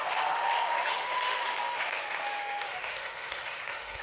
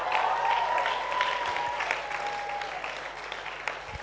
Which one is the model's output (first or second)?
first